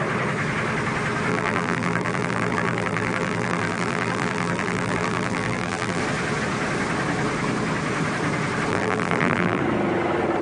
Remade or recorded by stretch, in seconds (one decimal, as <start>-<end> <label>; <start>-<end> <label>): 0.0-1.3 recorded; 1.3-6.0 remade; 6.0-8.7 recorded; 8.7-9.6 remade; 9.6-10.4 recorded